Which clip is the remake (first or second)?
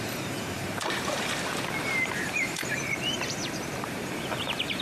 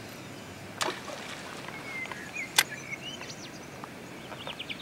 first